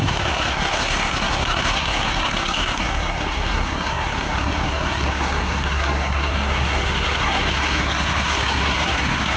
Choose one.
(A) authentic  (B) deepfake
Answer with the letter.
B